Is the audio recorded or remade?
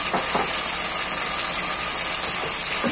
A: recorded